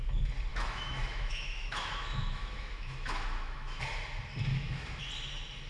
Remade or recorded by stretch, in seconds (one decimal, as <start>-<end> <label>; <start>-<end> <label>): 0.0-0.5 recorded; 0.5-3.8 remade; 3.8-4.5 recorded; 4.5-5.0 remade; 5.0-5.7 recorded